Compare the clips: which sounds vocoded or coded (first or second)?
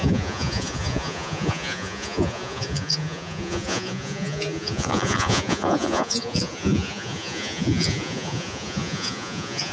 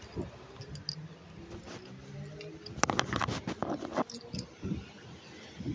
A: first